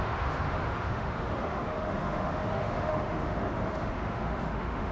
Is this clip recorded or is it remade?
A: remade